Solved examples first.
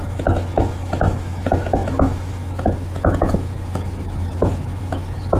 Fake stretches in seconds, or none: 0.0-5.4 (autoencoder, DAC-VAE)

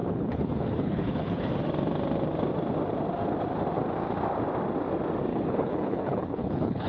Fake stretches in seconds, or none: 0.0-1.5 (codec, HILCodec); 5.3-6.9

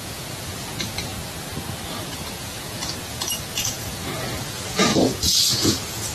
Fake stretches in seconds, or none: 0.0-1.1 (vocoder, Vocos); 2.0-6.1

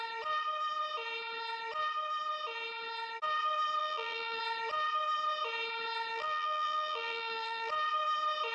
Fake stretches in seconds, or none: 3.8-4.4 (vocoder, BigVGAN v2); 6.1-7.7